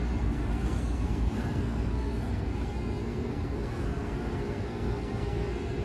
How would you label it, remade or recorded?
remade